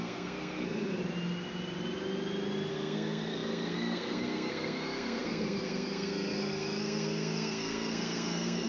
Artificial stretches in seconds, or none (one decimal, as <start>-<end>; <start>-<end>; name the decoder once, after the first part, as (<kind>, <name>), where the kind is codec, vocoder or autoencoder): 0.0-1.0 (codec, SNAC); 2.7-8.7